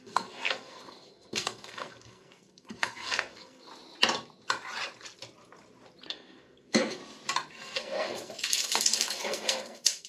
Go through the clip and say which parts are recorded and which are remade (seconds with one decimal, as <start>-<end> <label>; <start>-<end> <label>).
0.0-3.7 remade; 3.7-6.1 recorded; 6.1-7.0 remade; 7.0-7.5 recorded; 7.5-10.1 remade